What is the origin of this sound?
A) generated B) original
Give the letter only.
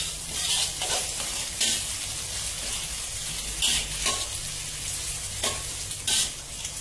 B